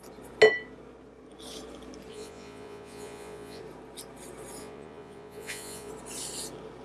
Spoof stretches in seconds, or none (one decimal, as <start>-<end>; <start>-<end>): 2.1-3.6; 4.6-5.9